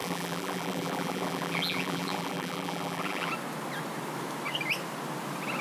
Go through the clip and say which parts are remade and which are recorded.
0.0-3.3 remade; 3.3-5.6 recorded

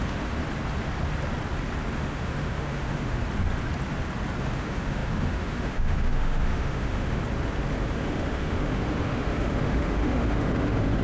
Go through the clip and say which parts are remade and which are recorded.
0.0-0.4 remade; 0.4-2.0 recorded; 2.0-3.2 remade; 3.2-4.4 recorded; 4.4-7.2 remade; 7.2-7.7 recorded; 7.7-11.0 remade

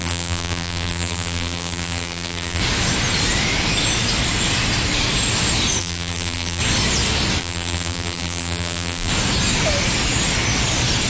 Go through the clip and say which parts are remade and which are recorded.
0.0-2.6 remade; 2.6-5.8 recorded; 5.8-6.6 remade; 6.6-7.4 recorded; 7.4-9.1 remade; 9.1-11.1 recorded